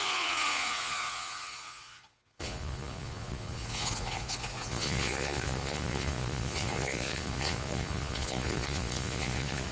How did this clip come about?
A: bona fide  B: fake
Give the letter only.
B